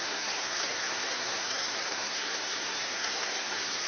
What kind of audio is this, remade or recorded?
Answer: remade